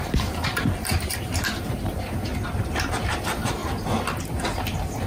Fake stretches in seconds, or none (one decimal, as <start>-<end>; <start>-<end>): 0.0-0.4; 1.1-2.3; 3.2-3.6